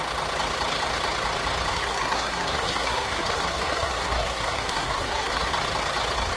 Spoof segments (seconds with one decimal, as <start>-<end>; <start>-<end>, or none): 1.7-5.5

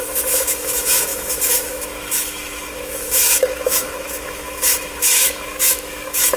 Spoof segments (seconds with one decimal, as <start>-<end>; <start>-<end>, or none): 0.0-6.4